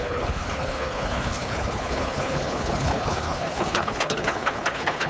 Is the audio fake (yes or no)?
yes